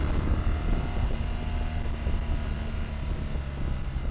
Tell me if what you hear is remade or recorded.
recorded